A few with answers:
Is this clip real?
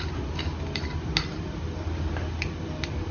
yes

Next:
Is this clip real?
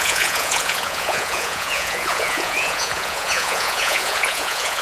no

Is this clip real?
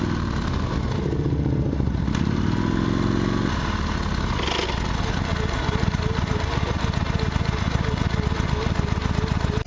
yes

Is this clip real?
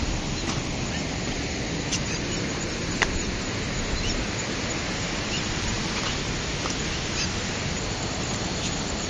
yes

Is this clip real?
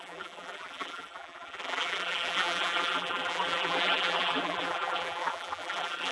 no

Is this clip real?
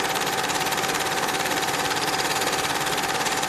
no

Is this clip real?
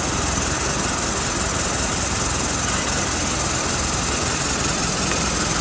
yes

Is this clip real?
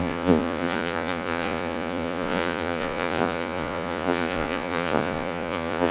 no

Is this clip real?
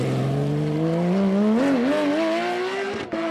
yes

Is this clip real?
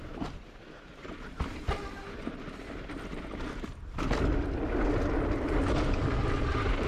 yes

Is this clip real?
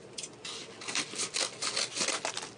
yes